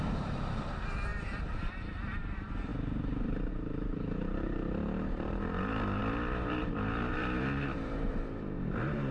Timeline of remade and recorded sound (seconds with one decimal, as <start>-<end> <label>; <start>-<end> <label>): 0.0-9.1 remade